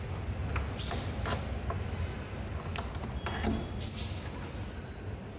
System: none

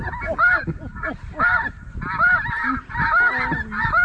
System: none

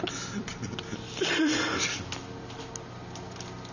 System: none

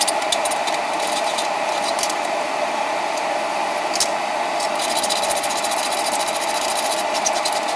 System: none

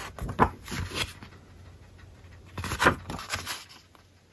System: none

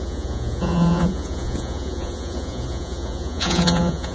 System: vocoder, Vocos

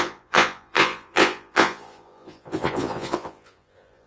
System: vocoder, Vocos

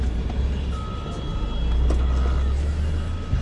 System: none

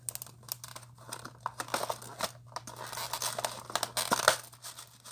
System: none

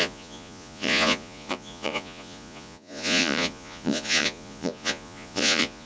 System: vocoder, Vocos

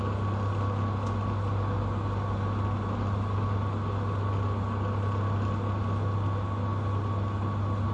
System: none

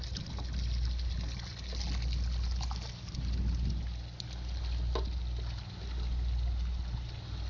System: none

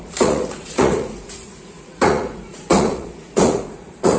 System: vocoder, Vocos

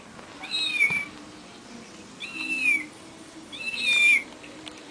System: none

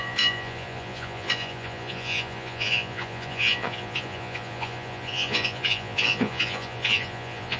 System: vocoder, Vocos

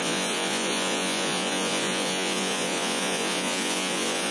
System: vocoder, Vocos